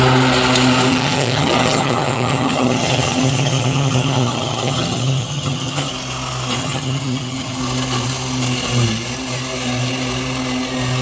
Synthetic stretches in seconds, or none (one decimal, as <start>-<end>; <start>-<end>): 0.9-5.9; 6.6-7.6